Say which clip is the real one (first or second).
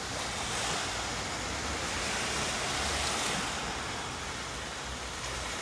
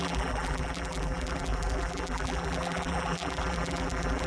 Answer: first